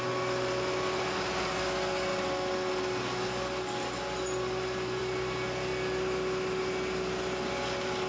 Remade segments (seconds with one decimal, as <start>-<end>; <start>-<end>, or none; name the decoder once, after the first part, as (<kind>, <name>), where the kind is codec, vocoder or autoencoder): none